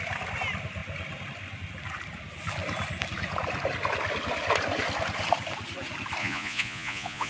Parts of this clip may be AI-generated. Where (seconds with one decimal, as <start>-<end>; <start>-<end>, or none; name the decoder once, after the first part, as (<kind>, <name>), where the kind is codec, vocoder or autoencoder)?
6.2-7.3 (vocoder, Vocos)

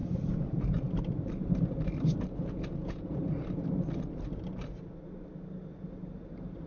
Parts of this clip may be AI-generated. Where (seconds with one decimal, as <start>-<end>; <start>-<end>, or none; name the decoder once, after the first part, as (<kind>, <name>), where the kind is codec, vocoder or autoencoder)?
0.0-0.9 (vocoder, Vocos); 2.8-3.4

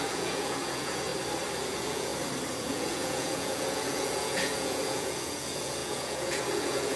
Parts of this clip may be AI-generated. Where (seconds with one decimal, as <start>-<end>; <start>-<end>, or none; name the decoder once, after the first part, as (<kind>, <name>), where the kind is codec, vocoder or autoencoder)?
0.0-1.1 (vocoder, Vocos); 1.7-2.1; 2.6-7.0